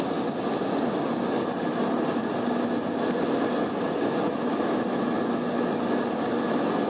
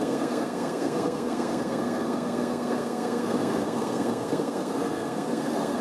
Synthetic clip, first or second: second